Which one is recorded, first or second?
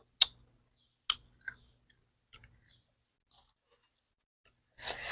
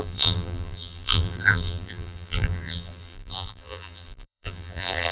first